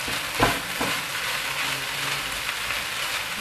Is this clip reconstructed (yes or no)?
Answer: no